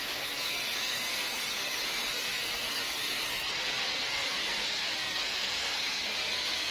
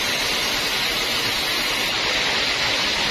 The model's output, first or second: first